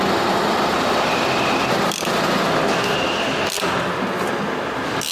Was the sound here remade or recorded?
recorded